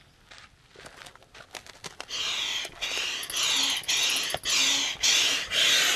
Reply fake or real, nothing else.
real